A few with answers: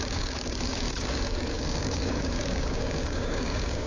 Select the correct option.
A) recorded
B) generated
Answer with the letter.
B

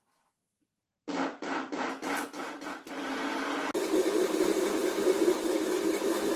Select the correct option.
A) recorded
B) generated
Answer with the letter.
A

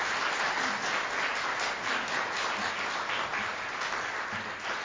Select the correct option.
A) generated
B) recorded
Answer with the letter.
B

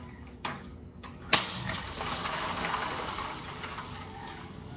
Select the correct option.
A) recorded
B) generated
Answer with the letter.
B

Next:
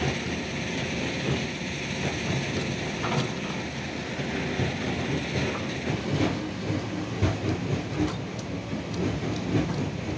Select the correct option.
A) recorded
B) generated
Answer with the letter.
A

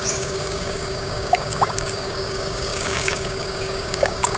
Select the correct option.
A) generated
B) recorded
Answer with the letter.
A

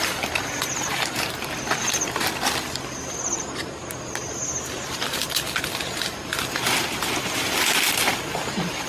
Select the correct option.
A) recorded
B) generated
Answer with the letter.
A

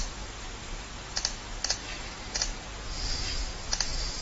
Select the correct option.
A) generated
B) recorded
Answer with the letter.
B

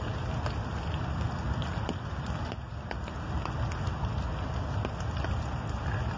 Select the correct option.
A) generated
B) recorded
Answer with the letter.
B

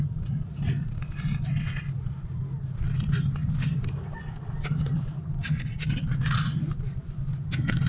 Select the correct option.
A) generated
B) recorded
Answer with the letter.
B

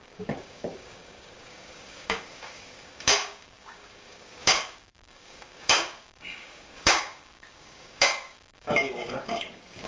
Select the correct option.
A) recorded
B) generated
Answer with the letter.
B